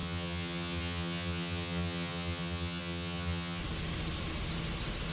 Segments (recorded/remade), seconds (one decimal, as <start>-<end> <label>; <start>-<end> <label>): 0.0-3.6 remade; 3.6-5.1 recorded